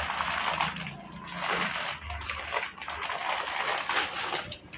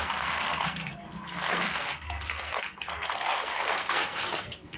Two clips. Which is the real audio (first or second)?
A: first